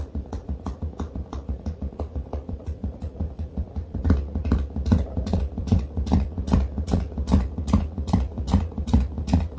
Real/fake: fake